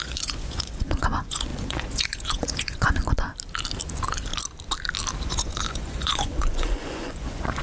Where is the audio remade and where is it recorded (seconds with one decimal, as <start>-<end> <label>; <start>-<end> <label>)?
0.0-3.0 remade; 3.0-5.2 recorded; 5.2-7.6 remade